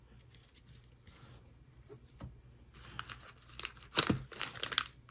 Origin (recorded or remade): recorded